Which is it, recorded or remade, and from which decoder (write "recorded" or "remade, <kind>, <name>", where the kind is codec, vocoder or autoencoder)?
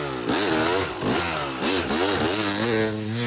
recorded